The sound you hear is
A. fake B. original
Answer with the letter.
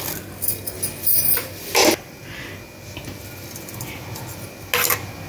B